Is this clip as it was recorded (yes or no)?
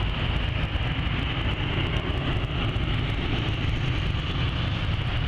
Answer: yes